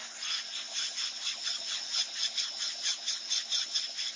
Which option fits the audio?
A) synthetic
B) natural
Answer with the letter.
B